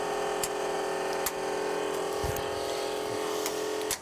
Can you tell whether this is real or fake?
real